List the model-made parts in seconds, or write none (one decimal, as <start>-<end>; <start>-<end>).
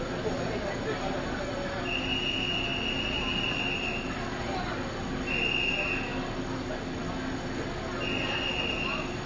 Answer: none